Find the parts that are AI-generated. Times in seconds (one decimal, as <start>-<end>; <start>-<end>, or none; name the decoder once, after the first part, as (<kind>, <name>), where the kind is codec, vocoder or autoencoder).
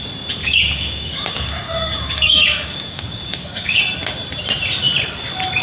0.4-3.8 (codec, DAC)